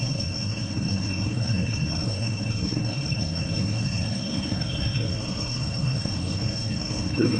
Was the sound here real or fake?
fake